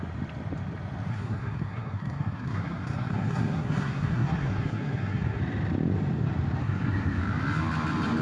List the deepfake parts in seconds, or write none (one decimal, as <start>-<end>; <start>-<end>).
1.1-5.4; 6.6-7.2